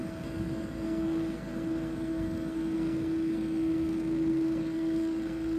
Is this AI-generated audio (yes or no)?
yes